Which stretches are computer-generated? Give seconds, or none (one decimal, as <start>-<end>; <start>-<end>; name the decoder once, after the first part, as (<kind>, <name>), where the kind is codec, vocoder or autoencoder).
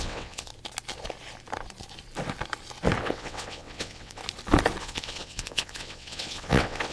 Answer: 0.0-0.5 (vocoder, WaveNeXt); 3.0-4.2; 4.8-6.9